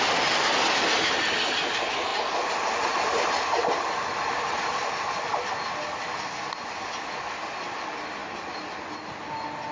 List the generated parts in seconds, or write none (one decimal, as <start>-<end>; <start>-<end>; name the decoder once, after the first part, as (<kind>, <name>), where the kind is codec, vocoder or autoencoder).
none